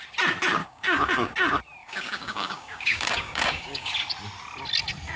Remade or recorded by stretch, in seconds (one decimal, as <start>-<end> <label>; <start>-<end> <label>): 0.0-0.6 recorded; 0.6-1.3 remade; 1.3-1.8 recorded; 1.8-3.9 remade; 3.9-5.2 recorded